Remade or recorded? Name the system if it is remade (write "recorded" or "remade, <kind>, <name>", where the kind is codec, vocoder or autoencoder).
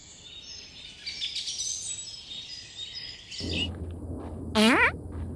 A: recorded